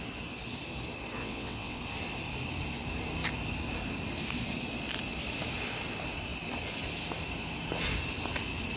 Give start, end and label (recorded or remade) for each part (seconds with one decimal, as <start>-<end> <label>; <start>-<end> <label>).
0.0-1.2 recorded; 1.2-1.8 remade; 1.8-8.8 recorded